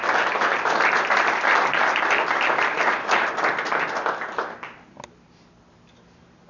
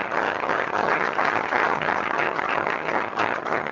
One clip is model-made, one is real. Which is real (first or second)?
first